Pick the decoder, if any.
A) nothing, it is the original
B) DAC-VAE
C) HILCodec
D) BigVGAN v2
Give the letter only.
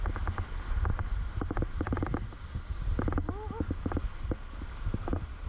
A